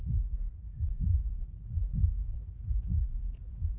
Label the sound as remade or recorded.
remade